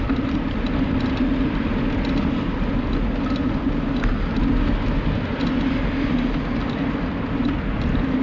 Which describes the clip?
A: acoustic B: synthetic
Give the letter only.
A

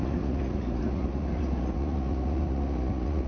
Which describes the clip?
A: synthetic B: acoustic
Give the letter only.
A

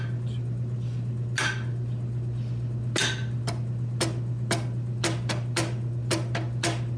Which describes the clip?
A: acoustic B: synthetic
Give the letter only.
A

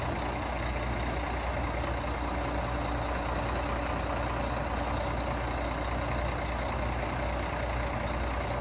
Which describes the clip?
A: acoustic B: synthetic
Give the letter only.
A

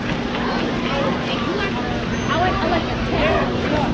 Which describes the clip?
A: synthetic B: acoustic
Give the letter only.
B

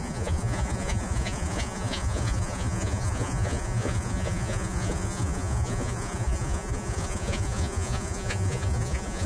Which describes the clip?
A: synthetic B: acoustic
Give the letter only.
A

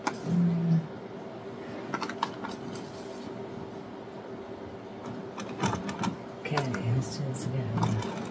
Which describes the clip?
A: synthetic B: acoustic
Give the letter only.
B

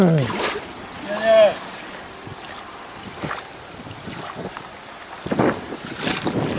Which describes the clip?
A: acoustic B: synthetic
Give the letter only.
A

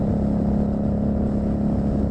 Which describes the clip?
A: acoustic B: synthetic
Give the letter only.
A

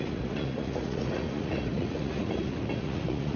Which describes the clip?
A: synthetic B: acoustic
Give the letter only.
A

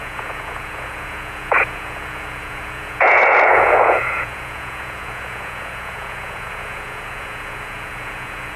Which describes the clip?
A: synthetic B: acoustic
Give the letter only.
A